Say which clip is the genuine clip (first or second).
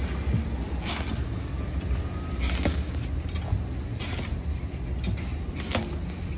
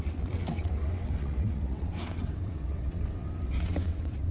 first